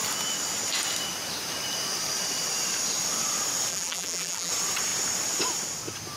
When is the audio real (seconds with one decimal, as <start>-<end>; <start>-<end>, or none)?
0.0-3.7; 4.5-6.2